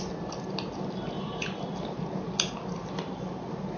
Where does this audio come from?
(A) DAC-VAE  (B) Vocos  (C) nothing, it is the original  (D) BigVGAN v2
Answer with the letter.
C